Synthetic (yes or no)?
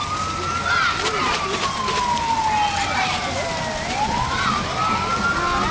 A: no